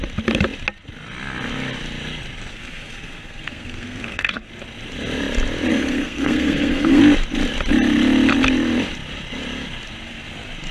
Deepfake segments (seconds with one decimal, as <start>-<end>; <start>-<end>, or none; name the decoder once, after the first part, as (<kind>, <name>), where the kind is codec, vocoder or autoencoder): 2.5-4.5 (codec, SNAC); 5.7-7.0